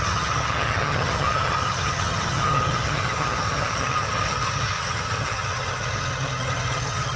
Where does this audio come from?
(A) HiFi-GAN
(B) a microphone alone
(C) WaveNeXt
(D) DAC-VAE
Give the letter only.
A